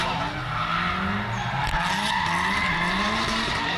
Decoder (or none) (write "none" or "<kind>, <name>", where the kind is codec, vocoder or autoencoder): none